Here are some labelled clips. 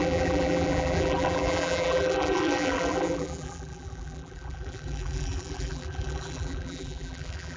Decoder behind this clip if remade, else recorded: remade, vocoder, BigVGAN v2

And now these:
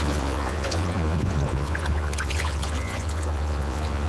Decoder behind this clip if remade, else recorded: remade, vocoder, Vocos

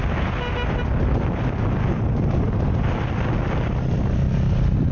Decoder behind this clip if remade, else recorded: recorded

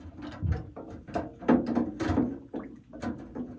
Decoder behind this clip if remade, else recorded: recorded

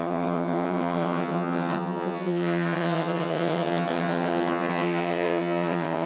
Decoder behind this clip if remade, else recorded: remade, vocoder, HiFi-GAN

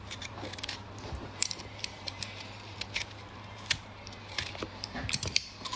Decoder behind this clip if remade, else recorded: remade, vocoder, BigVGAN v2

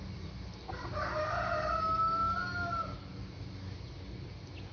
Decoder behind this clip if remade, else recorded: recorded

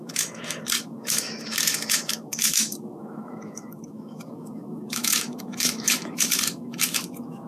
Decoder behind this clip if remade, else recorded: remade, autoencoder, DAC-VAE